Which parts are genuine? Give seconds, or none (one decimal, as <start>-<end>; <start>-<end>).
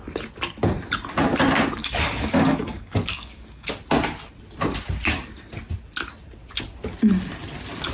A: 0.0-1.8; 3.7-7.9